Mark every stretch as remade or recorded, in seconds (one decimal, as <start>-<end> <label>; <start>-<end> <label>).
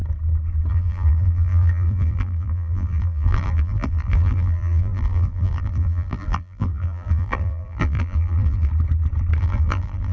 0.0-0.7 recorded; 0.7-8.7 remade; 8.7-9.4 recorded; 9.4-10.1 remade